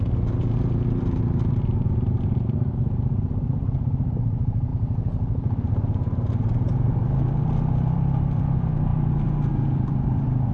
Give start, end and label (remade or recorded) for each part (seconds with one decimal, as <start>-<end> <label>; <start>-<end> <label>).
0.0-4.7 remade; 4.7-5.7 recorded; 5.7-10.5 remade